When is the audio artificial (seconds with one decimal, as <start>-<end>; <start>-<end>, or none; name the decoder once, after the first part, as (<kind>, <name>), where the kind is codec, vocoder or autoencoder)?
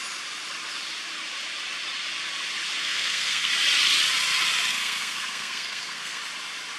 2.8-3.5 (codec, SNAC); 4.7-6.2